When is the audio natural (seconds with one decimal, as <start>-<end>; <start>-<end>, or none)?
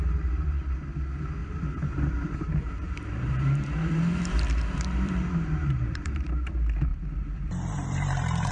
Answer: 0.0-1.4; 6.5-6.9